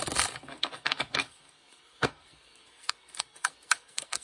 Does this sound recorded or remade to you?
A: remade